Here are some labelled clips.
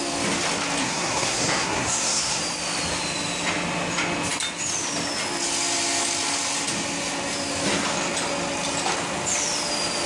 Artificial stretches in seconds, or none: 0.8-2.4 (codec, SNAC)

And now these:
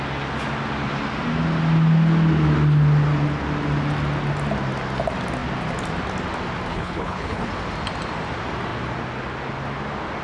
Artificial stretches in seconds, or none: 6.7-7.5 (codec, HILCodec)

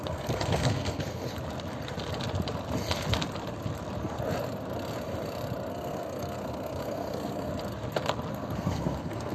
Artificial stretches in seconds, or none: 0.0-1.3 (codec, SNAC); 5.7-7.5; 8.3-9.3

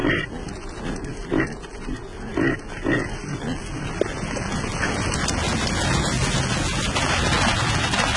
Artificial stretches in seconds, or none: none

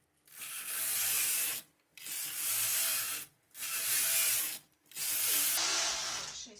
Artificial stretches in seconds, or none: none